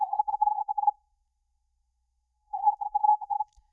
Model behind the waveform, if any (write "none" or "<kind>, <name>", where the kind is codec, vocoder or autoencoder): codec, SNAC